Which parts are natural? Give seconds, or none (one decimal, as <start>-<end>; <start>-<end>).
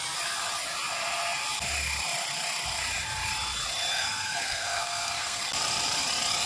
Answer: 0.0-3.9; 5.4-6.5